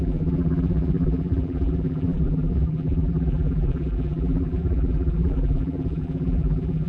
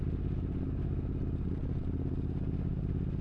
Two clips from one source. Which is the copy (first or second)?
first